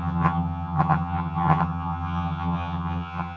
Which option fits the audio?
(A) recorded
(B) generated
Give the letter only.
B